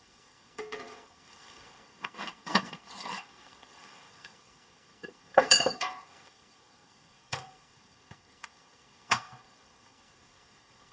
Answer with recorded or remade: remade